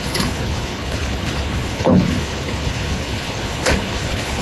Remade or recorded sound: remade